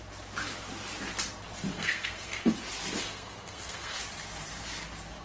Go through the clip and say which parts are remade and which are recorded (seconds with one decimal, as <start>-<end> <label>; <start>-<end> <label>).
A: 0.0-1.7 recorded; 1.7-2.5 remade; 2.5-3.0 recorded; 3.0-4.0 remade; 4.0-5.2 recorded